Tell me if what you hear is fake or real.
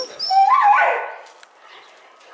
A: real